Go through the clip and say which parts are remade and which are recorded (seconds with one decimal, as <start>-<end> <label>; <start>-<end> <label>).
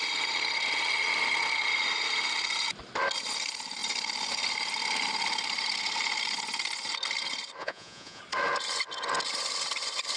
0.0-7.6 recorded; 7.6-8.2 remade; 8.2-10.2 recorded